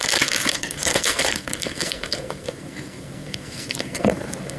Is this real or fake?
fake